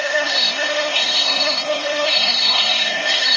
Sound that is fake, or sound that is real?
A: fake